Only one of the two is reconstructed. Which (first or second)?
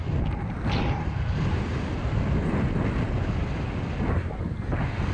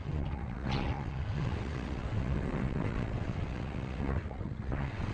second